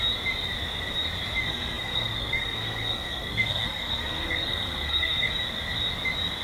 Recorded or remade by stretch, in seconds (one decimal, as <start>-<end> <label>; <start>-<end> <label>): 0.0-1.5 recorded; 1.5-5.3 remade; 5.3-6.4 recorded

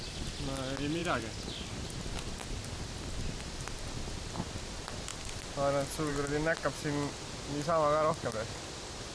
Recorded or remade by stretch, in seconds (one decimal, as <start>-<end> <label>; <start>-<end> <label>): 0.0-9.1 recorded

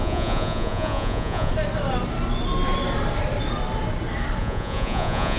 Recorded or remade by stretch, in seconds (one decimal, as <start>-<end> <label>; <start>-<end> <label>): 0.0-1.5 remade; 1.5-4.4 recorded; 4.4-5.4 remade

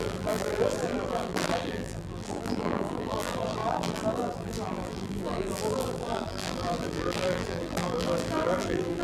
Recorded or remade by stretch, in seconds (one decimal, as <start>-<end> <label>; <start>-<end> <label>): 0.0-9.0 remade

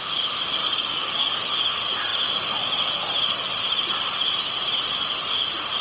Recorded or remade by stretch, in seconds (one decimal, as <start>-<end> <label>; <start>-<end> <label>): 0.0-0.6 recorded; 0.6-1.4 remade; 1.4-5.8 recorded

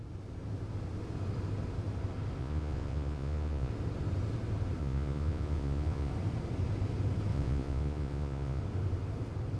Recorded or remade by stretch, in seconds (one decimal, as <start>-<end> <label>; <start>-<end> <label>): 0.0-2.4 recorded; 2.4-3.7 remade; 3.7-4.8 recorded; 4.8-6.1 remade; 6.1-7.3 recorded; 7.3-8.6 remade; 8.6-9.6 recorded

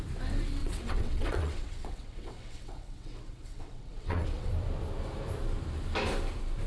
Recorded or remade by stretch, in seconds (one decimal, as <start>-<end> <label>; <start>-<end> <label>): 0.0-0.6 recorded; 0.6-4.5 remade; 4.5-6.7 recorded